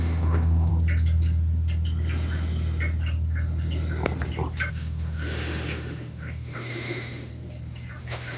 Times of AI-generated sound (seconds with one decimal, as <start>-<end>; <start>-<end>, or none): 0.0-0.7; 4.7-7.3; 8.0-8.4